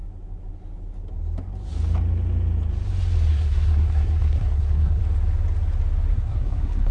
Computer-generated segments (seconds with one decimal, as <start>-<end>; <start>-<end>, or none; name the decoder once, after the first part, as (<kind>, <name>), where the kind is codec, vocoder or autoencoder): 3.3-5.0 (codec, SNAC); 6.1-6.9